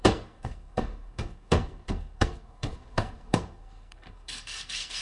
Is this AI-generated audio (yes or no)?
yes